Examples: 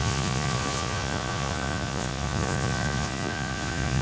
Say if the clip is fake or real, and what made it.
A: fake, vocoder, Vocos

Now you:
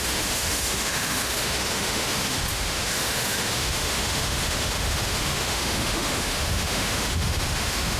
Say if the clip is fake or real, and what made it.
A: fake, autoencoder, DAC-VAE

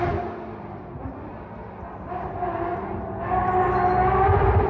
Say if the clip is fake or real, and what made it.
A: real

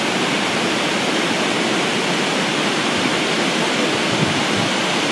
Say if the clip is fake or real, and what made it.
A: fake, vocoder, BigVGAN v2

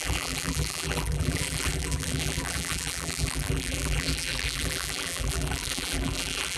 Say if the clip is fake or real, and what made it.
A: fake, vocoder, BigVGAN v2